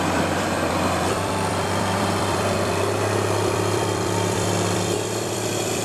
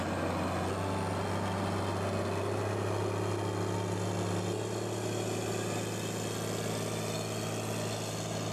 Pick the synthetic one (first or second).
first